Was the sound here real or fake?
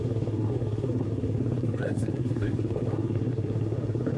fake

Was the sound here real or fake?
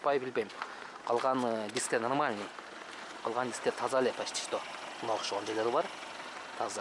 real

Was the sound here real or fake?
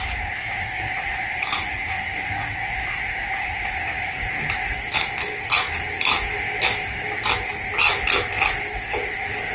real